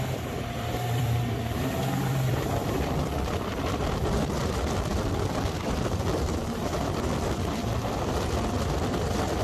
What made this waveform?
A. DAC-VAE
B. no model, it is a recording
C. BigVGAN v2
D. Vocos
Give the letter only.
C